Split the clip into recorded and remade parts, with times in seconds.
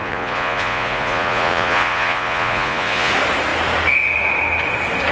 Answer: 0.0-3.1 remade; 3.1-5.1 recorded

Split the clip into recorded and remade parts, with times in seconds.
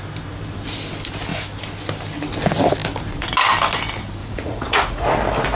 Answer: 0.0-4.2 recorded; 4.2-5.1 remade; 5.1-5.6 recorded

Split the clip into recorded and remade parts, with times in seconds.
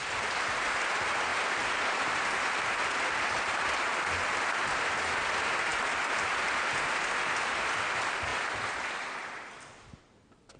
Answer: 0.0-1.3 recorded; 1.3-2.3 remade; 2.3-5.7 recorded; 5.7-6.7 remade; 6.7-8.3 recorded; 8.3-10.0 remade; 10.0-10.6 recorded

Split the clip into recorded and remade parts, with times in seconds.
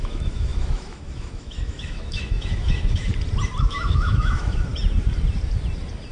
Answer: 0.0-3.1 remade; 3.1-3.6 recorded; 3.6-4.7 remade; 4.7-6.1 recorded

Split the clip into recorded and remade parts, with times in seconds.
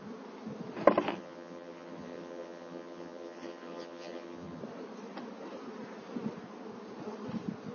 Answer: 0.0-1.1 recorded; 1.1-4.6 remade; 4.6-7.7 recorded